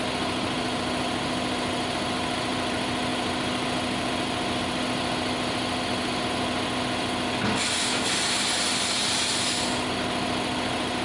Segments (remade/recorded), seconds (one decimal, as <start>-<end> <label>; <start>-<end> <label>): 0.0-11.0 recorded